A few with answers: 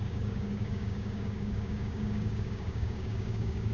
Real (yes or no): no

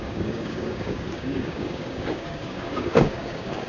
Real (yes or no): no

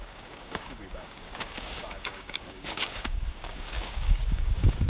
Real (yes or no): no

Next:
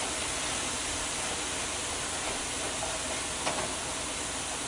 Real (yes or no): yes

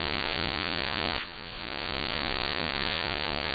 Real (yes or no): no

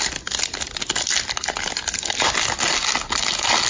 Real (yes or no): yes